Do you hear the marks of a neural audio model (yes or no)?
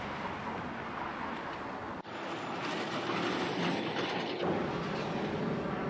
no